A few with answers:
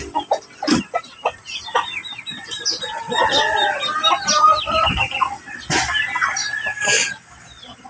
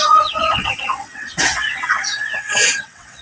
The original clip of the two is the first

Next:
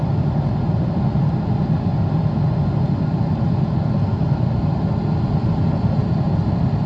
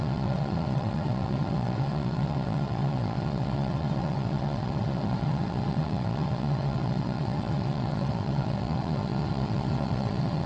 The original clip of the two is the first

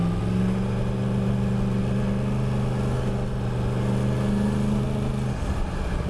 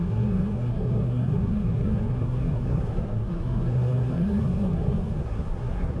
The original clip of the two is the first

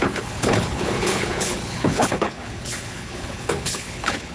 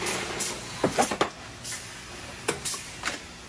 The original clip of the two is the second